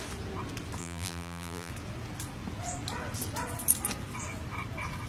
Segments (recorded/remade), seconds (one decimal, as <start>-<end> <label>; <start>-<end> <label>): 0.0-0.8 recorded; 0.8-1.7 remade; 1.7-5.1 recorded

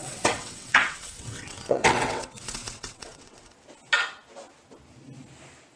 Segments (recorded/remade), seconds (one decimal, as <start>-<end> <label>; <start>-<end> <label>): 0.0-3.5 remade; 3.5-5.8 recorded

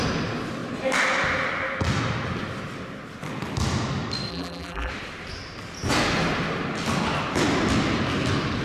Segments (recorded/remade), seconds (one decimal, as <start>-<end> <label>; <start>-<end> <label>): 0.0-4.3 recorded; 4.3-4.9 remade; 4.9-8.6 recorded

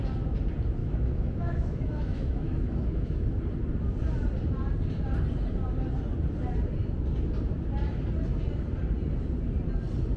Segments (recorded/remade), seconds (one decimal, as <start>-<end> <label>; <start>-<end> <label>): 0.0-0.8 recorded; 0.8-3.4 remade; 3.4-10.2 recorded

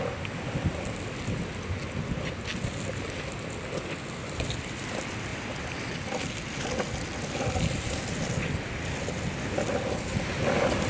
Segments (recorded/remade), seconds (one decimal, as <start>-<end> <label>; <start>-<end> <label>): 0.0-10.9 recorded

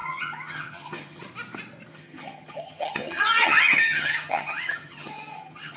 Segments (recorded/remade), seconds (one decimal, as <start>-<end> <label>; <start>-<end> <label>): 0.0-1.2 remade; 1.2-1.9 recorded; 1.9-5.8 remade

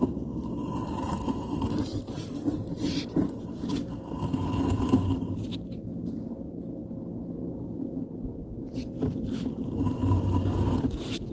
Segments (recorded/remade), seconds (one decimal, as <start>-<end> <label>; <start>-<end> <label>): 0.0-1.9 recorded; 1.9-6.1 remade; 6.1-11.3 recorded

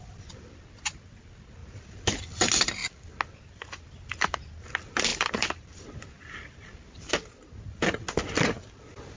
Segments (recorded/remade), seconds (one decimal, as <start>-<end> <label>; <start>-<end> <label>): 0.0-9.2 recorded